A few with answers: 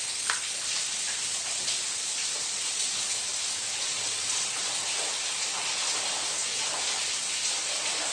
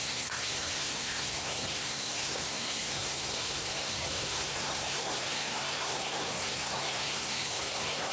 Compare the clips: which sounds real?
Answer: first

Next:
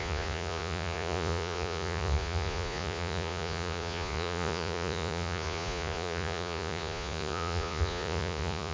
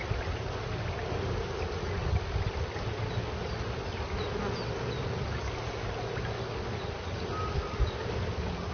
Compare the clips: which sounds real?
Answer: second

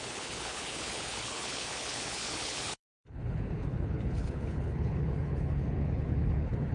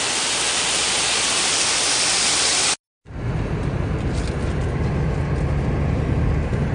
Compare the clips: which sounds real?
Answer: second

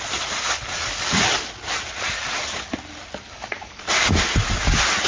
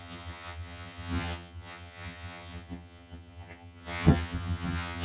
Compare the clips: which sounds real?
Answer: first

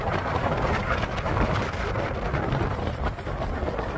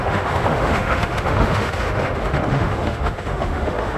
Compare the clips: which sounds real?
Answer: first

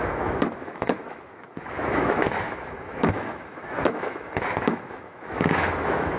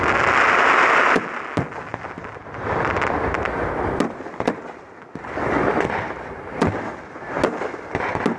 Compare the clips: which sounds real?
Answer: second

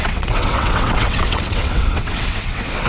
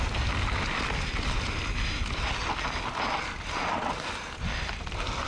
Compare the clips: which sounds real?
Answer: second